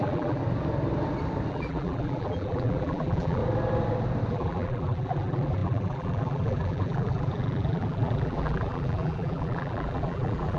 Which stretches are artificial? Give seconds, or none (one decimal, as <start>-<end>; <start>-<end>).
0.0-0.4; 1.5-3.4; 4.3-10.6